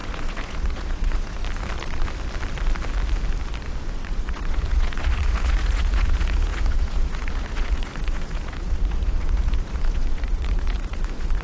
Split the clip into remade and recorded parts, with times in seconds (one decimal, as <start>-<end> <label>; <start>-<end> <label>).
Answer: 0.0-1.4 remade; 1.4-4.0 recorded; 4.0-11.4 remade